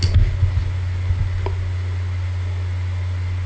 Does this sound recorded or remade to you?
recorded